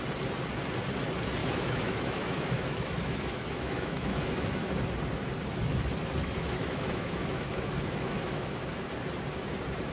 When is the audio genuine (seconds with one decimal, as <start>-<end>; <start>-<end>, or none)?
0.0-1.4; 4.7-6.2; 8.6-9.9